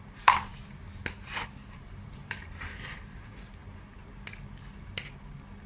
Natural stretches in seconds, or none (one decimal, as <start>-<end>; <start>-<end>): 0.5-1.1; 3.6-5.7